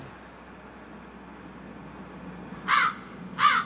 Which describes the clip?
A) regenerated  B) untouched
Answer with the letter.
B